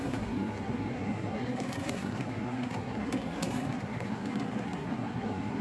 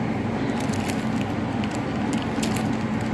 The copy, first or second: first